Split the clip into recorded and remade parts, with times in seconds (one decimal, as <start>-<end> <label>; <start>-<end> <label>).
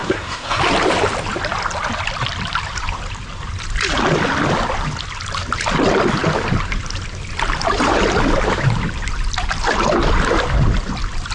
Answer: 0.0-0.6 remade; 0.6-11.3 recorded